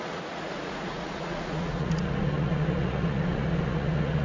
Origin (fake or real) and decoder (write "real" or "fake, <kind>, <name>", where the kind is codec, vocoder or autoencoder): fake, vocoder, Vocos